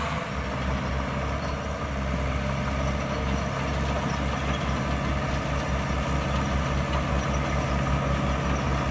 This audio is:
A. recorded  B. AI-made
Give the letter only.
A